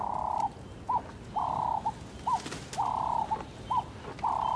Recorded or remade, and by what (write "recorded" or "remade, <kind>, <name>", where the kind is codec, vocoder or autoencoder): recorded